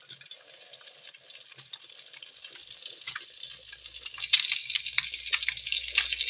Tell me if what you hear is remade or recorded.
recorded